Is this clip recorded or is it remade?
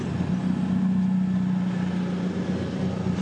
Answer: recorded